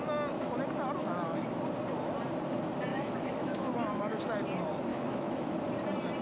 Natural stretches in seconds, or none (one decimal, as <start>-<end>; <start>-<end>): 0.0-1.0; 1.6-2.9; 4.2-4.9; 5.6-6.2